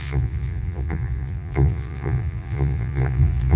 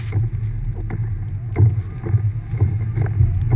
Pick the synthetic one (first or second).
first